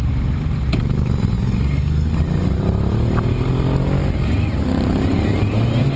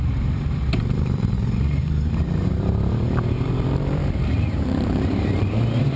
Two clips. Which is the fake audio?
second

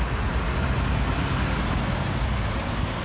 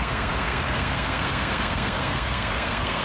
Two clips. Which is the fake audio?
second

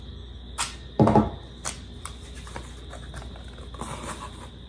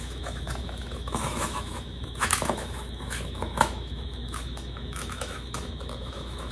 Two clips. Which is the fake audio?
second